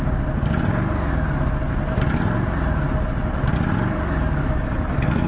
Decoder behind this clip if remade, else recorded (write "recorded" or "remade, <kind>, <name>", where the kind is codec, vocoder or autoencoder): recorded